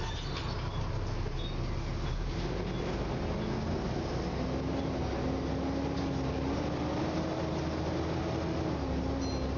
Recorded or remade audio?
recorded